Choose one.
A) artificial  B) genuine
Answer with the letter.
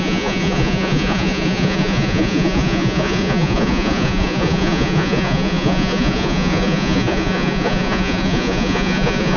A